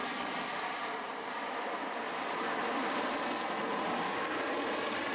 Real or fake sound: real